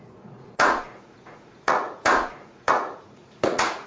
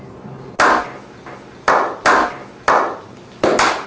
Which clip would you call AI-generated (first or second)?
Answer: first